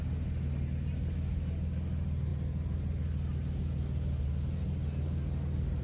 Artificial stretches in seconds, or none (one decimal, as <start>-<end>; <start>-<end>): none

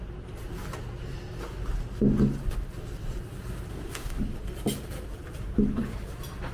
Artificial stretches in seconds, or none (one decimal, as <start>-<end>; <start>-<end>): 3.7-4.2

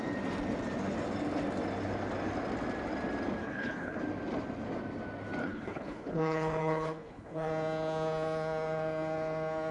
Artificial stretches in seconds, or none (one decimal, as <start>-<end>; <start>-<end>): 3.4-4.0; 5.4-7.5

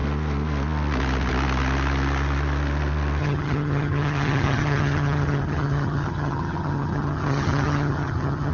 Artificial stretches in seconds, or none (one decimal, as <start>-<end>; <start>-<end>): 3.2-8.5

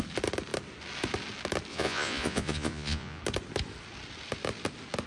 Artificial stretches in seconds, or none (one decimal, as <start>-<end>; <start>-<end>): 1.7-3.2

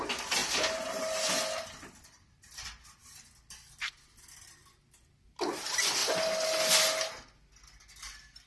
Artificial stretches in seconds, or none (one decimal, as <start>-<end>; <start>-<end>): 0.4-1.3; 6.0-6.8

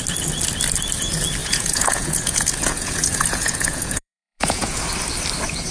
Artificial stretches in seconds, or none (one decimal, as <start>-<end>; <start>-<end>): 1.4-4.8

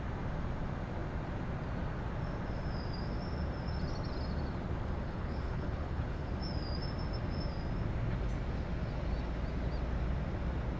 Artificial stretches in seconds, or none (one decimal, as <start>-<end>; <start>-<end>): 5.0-6.3